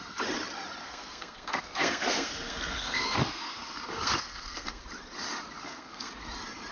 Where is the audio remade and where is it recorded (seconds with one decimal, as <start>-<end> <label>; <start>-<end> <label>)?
0.0-0.8 recorded; 0.8-4.8 remade; 4.8-5.6 recorded; 5.6-6.1 remade; 6.1-6.7 recorded